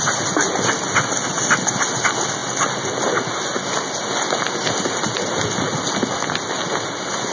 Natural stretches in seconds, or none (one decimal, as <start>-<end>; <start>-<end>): 0.0-7.3